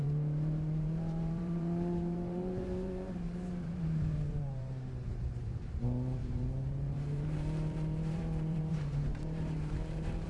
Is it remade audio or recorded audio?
remade